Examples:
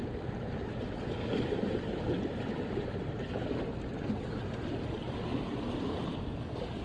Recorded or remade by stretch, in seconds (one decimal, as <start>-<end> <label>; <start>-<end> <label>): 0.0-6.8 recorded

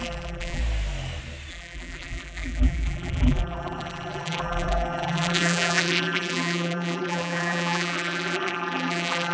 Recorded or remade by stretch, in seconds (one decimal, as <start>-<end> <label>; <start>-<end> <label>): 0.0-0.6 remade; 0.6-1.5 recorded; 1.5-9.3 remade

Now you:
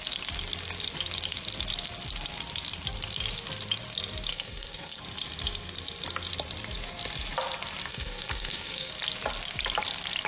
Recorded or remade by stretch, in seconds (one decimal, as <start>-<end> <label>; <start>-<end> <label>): 0.0-4.3 recorded; 4.3-5.0 remade; 5.0-7.9 recorded; 7.9-8.9 remade; 8.9-10.3 recorded

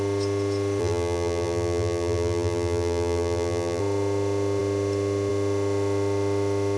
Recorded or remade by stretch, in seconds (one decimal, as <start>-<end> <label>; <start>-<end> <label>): 0.0-0.8 recorded; 0.8-3.8 remade; 3.8-6.8 recorded